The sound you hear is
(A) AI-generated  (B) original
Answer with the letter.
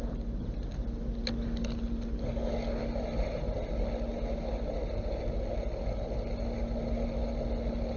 B